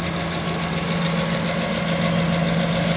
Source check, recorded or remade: recorded